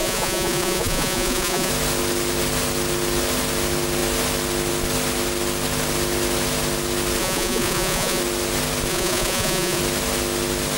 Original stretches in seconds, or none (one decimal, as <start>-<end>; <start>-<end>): 1.7-7.2; 8.2-8.9; 9.8-10.8